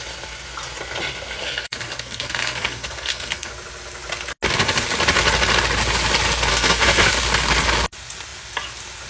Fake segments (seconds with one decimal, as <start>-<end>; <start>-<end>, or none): 1.4-3.5; 6.5-7.1